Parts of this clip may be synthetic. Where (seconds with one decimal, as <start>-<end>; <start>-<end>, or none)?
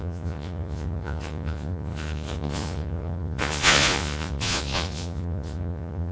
0.0-6.1